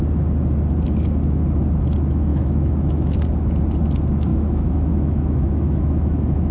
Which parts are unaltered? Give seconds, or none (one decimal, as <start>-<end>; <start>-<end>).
0.0-2.3; 3.2-4.3